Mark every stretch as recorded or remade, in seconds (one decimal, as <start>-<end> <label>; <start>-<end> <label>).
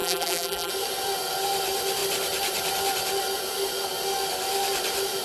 0.0-0.7 remade; 0.7-5.2 recorded